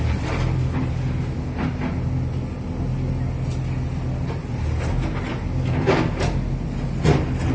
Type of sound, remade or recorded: recorded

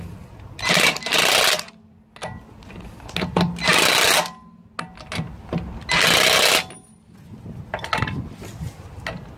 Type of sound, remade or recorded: recorded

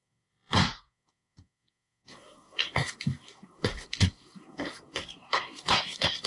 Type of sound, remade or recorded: remade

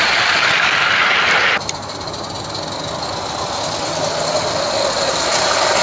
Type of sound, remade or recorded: recorded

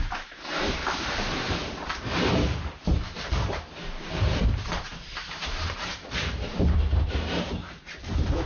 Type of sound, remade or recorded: remade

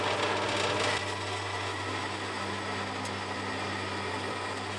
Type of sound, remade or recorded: recorded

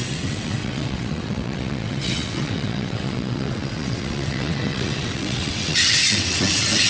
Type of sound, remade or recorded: remade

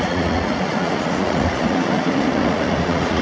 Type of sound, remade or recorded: remade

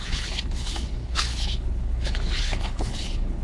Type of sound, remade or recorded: remade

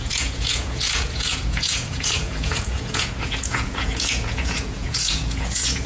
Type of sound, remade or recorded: remade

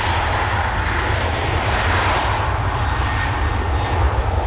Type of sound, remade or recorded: recorded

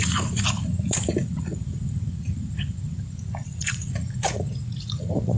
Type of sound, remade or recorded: remade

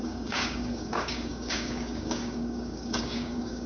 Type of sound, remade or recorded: remade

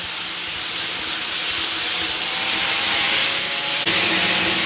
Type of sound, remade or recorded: recorded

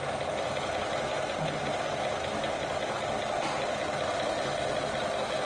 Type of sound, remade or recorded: recorded